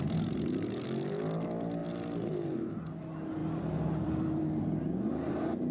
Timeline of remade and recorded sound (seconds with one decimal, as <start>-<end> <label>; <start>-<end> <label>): 0.0-3.4 recorded; 3.4-4.8 remade; 4.8-5.7 recorded